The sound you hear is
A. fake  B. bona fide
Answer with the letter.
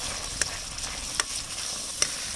B